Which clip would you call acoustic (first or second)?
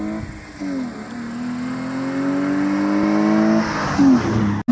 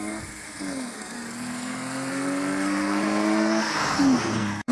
first